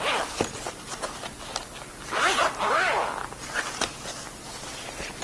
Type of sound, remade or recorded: recorded